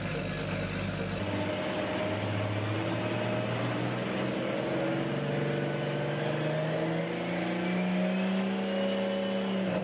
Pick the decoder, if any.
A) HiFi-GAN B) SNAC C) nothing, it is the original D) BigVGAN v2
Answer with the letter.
C